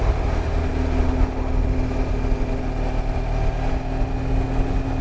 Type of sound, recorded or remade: recorded